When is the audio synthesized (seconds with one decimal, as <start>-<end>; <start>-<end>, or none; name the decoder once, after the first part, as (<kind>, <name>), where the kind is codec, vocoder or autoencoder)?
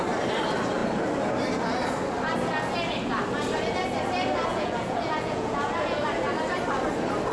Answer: 4.5-6.0 (vocoder, Vocos)